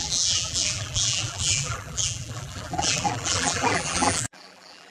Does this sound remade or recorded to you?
remade